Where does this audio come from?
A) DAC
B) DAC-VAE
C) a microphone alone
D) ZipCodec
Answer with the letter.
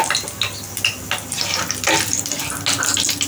C